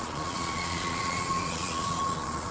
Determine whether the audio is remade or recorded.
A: remade